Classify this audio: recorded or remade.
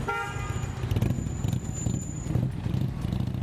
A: recorded